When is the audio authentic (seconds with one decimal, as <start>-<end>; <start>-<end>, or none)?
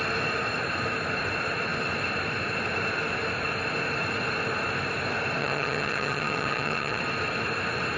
0.0-5.4; 7.0-8.0